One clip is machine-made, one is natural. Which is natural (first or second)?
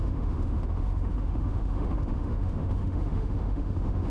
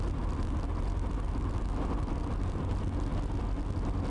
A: second